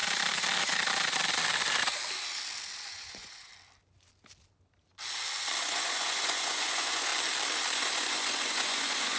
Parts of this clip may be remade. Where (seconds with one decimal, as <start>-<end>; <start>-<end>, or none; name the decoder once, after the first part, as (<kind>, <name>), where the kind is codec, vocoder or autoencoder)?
2.9-3.5 (vocoder, Vocos); 5.6-7.1; 7.7-9.2